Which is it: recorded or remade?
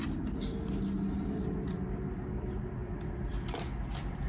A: recorded